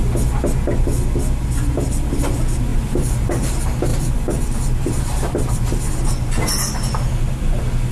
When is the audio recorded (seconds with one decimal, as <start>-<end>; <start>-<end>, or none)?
0.0-2.7; 3.5-3.9; 5.9-7.9